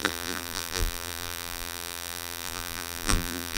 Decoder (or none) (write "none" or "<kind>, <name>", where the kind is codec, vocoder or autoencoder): vocoder, BigVGAN v2